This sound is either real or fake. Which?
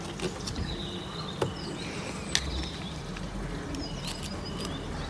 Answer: real